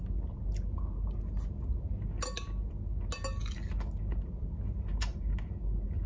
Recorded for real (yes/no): yes